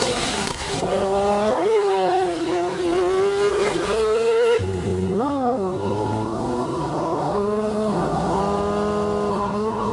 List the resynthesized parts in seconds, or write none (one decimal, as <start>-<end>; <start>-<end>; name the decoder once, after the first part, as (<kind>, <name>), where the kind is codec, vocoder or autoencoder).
0.0-2.8 (codec, SNAC); 3.5-8.4; 9.3-9.9